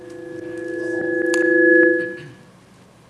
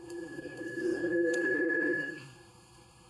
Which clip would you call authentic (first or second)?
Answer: first